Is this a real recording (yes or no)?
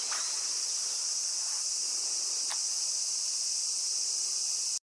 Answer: yes